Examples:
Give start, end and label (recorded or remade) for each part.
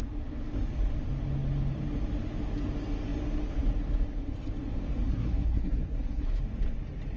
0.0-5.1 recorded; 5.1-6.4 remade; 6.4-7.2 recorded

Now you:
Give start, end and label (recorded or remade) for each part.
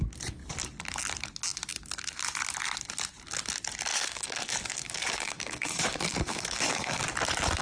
0.0-3.9 recorded; 3.9-7.0 remade; 7.0-7.6 recorded